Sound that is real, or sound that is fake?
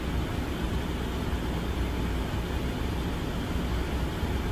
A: real